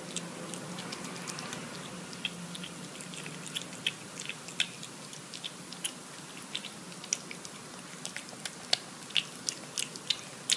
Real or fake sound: real